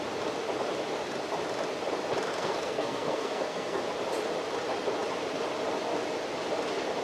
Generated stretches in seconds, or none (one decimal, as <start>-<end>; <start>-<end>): 2.3-3.8

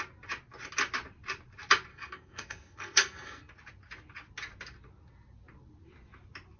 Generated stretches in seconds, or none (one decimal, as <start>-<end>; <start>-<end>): 1.9-3.4

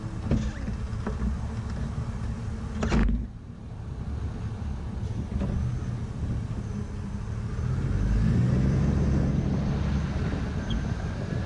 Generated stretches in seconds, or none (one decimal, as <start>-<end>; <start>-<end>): none

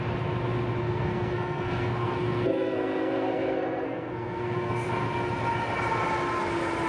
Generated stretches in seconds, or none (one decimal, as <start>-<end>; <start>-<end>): 0.8-4.9

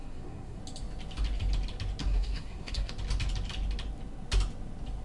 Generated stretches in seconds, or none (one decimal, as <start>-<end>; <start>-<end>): 0.0-0.6; 2.0-2.9

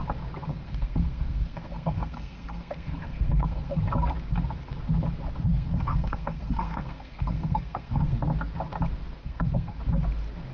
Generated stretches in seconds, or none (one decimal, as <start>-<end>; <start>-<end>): 0.5-3.8; 5.5-8.2; 9.2-9.8

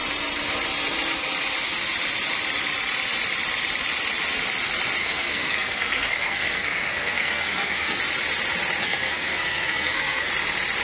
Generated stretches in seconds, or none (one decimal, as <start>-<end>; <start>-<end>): 5.0-8.0; 8.8-10.3